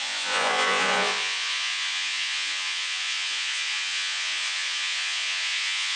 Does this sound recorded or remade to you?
remade